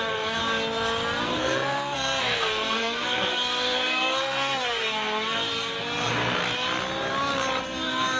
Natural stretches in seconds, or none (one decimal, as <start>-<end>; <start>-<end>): 0.4-1.2; 6.4-7.6